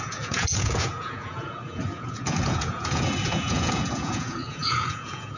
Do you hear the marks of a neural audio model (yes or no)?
yes